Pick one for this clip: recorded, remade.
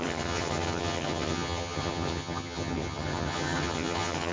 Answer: remade